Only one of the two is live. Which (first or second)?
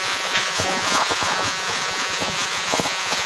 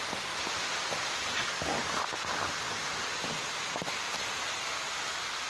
second